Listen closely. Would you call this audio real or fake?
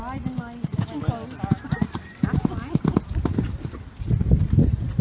real